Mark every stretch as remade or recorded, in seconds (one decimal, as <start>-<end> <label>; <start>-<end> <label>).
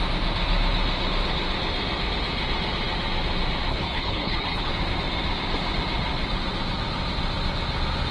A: 0.0-3.7 recorded; 3.7-4.7 remade; 4.7-8.1 recorded